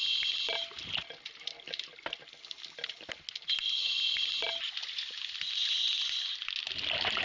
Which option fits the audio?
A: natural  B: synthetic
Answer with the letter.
A